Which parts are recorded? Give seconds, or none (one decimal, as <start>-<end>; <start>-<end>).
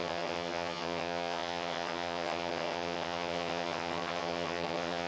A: none